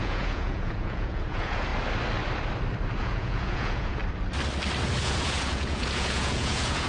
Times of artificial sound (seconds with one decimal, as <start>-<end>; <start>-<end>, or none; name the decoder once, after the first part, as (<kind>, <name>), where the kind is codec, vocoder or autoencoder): 0.0-1.7 (vocoder, Vocos); 3.0-4.0; 5.0-6.9